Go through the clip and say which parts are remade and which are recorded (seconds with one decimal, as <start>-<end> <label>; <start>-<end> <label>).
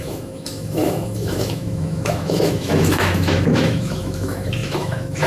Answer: 0.0-5.3 remade